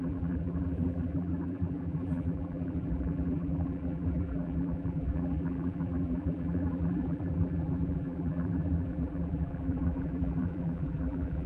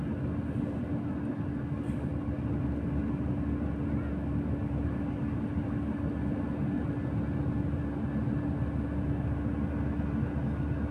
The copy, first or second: first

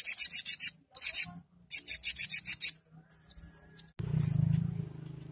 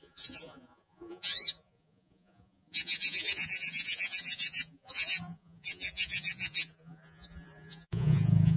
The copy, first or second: second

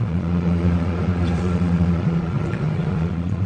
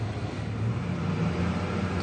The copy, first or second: first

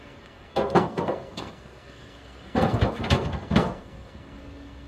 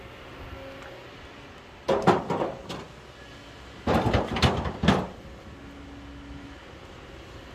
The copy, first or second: first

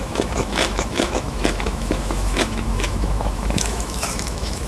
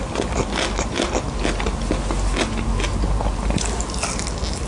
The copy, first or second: first